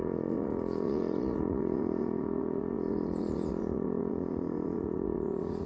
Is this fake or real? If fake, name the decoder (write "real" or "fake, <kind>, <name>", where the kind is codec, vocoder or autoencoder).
fake, vocoder, Vocos